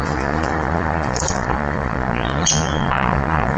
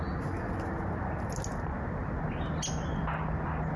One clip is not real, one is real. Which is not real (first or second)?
first